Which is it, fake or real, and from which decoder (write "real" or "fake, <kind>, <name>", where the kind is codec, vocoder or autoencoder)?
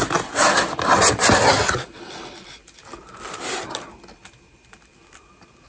real